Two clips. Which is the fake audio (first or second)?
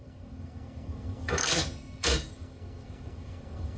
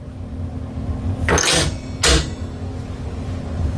first